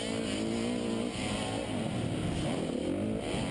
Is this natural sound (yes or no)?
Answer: yes